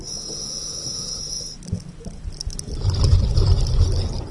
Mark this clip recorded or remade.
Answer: recorded